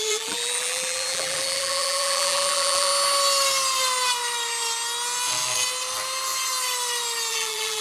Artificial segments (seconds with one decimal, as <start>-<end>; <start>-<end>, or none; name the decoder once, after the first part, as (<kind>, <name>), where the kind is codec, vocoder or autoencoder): 0.0-2.9 (vocoder, BigVGAN v2); 7.3-7.8